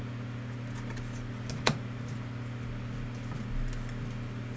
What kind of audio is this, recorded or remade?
recorded